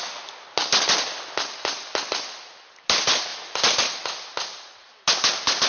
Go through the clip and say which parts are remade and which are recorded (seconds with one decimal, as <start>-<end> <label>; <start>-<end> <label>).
0.0-5.7 recorded